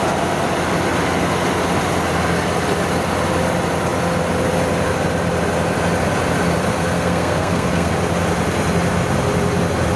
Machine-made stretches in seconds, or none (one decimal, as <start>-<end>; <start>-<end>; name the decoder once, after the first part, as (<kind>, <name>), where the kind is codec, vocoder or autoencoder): 6.7-7.9 (codec, SNAC)